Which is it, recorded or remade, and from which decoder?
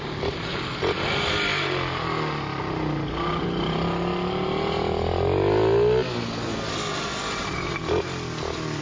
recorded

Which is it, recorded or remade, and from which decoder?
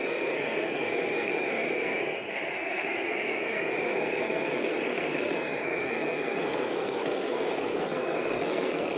remade, codec, SNAC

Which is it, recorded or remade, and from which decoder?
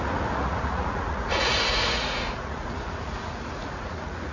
remade, vocoder, Vocos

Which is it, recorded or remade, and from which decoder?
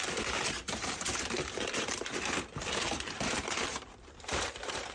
remade, vocoder, BigVGAN v2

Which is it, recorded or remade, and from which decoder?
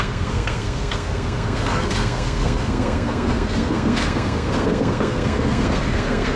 remade, codec, SNAC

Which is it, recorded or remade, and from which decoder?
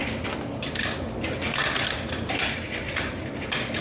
recorded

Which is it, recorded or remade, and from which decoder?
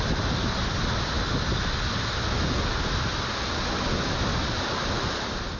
recorded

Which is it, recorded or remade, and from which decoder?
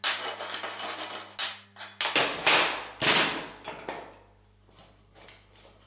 recorded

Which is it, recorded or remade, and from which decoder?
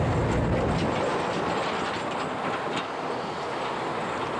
recorded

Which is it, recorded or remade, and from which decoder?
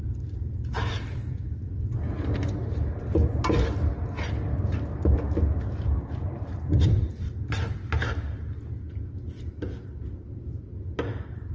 remade, vocoder, BigVGAN v2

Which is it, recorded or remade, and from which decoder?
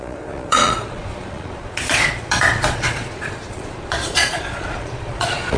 remade, vocoder, Vocos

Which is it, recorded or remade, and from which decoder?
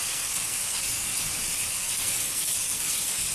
remade, codec, SNAC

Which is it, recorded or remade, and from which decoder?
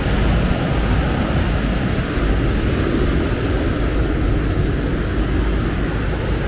recorded